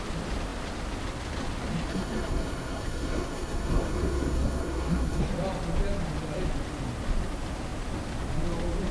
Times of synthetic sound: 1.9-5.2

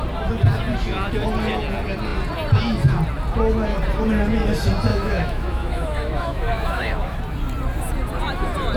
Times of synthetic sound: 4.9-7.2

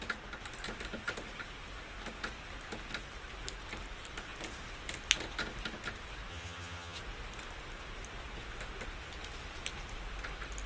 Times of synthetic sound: 6.3-7.0

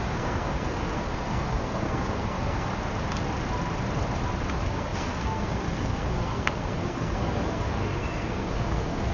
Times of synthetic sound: 0.0-2.7; 4.5-9.1

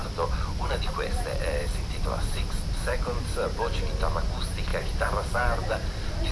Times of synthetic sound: 0.0-3.8; 4.7-6.3